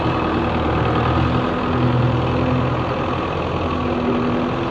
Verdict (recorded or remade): recorded